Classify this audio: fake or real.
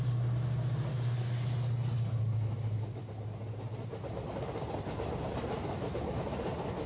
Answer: real